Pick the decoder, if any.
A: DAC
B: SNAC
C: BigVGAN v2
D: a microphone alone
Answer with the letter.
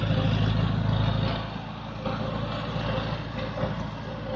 D